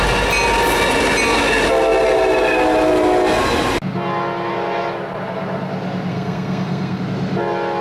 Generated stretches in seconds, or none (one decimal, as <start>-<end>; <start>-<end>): 6.1-7.0